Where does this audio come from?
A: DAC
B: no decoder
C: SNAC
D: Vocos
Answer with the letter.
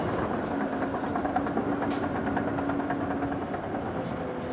B